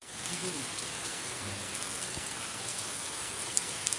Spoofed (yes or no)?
yes